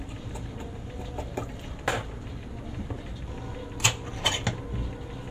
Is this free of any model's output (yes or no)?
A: yes